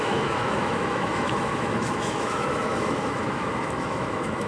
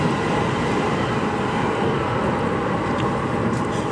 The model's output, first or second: first